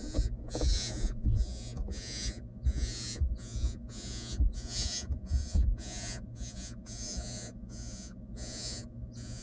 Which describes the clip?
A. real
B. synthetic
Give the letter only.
B